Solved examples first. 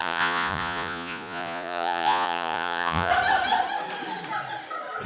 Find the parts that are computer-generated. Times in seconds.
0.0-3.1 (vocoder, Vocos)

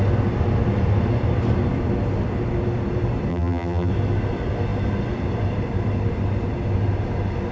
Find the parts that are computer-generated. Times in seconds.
3.3-3.9 (vocoder, BigVGAN v2)

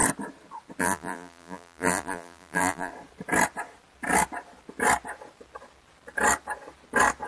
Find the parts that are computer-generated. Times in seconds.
0.8-2.9 (vocoder, BigVGAN v2)

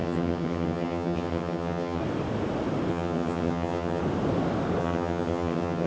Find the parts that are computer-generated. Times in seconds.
0.0-2.0 (vocoder, HiFi-GAN); 2.9-4.0; 4.8-5.9

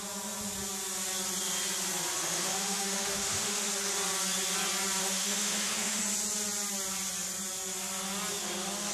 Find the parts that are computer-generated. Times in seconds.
2.2-3.7 (autoencoder, DAC-VAE); 5.0-6.0